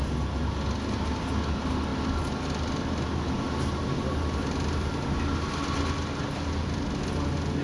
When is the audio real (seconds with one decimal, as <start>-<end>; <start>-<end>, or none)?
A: 0.0-7.6